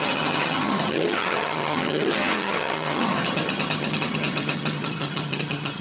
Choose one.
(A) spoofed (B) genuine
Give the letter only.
A